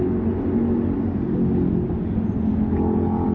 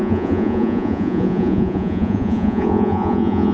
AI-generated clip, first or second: second